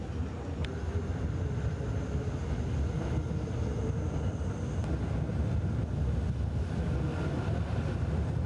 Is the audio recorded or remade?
recorded